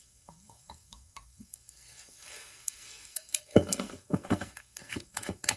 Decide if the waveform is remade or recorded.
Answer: remade